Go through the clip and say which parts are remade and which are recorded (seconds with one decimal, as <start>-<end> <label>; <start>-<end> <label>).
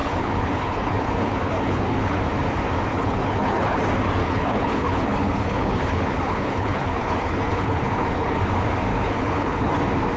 0.0-2.2 remade; 2.2-2.9 recorded; 2.9-3.8 remade; 3.8-4.2 recorded; 4.2-8.4 remade; 8.4-8.9 recorded; 8.9-9.7 remade; 9.7-10.2 recorded